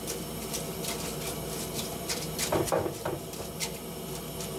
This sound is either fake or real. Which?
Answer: real